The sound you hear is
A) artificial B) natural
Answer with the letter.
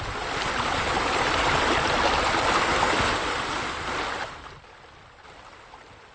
B